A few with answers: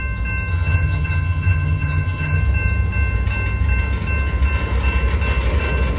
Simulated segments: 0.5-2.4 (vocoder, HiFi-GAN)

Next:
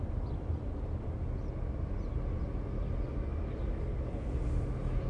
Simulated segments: none

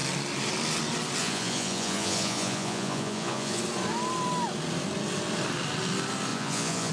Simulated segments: 1.2-3.6 (vocoder, Vocos); 6.3-6.9